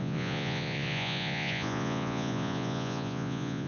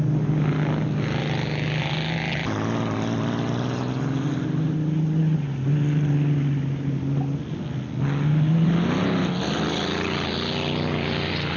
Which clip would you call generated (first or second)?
first